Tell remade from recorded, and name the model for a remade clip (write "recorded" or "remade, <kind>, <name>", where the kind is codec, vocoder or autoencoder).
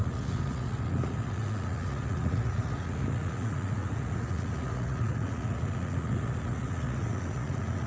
remade, vocoder, Vocos